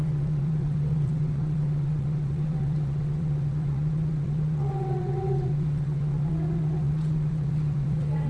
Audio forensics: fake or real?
fake